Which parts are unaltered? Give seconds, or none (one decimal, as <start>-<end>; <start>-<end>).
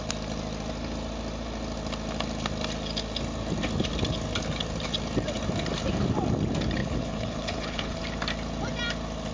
0.0-6.8; 8.0-9.3